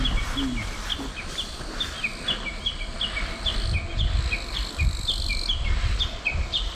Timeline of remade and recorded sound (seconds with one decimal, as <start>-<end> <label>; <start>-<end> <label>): 0.0-6.7 recorded